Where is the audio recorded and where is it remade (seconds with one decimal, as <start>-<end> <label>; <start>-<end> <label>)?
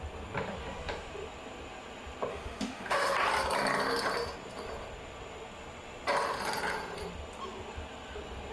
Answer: 0.0-2.3 recorded; 2.3-3.1 remade; 3.1-8.5 recorded